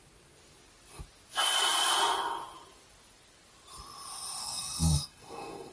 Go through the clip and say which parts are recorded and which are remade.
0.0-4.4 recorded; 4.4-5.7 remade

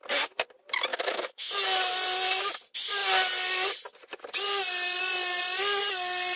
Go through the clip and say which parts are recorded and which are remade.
0.0-0.9 recorded; 0.9-1.5 remade; 1.5-6.4 recorded

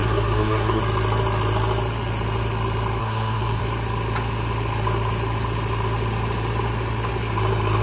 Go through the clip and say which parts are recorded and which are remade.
0.0-0.8 remade; 0.8-3.0 recorded; 3.0-3.6 remade; 3.6-7.8 recorded

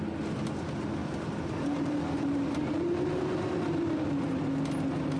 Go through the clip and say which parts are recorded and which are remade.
0.0-1.0 recorded; 1.0-3.5 remade; 3.5-5.2 recorded

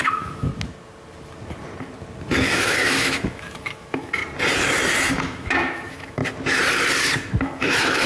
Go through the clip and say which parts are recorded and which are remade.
0.0-0.5 remade; 0.5-2.4 recorded; 2.4-4.2 remade; 4.2-5.1 recorded; 5.1-6.2 remade; 6.2-7.4 recorded; 7.4-8.1 remade

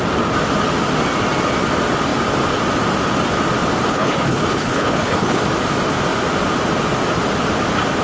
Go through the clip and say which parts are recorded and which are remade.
0.0-3.9 recorded; 3.9-5.4 remade; 5.4-8.0 recorded